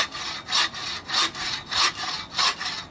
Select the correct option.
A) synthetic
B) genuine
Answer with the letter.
B